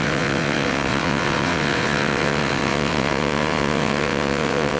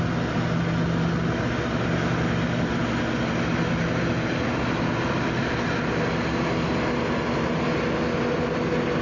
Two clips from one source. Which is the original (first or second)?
second